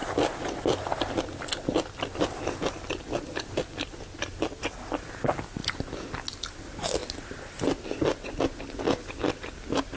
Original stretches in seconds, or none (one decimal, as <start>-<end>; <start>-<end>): 0.0-10.0